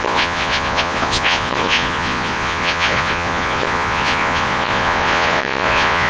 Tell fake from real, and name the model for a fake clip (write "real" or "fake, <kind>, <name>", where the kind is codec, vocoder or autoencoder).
fake, vocoder, Vocos